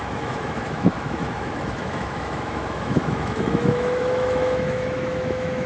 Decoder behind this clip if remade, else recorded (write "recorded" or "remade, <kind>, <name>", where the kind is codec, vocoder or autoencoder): remade, autoencoder, DAC-VAE